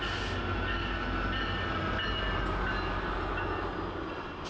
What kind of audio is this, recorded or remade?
recorded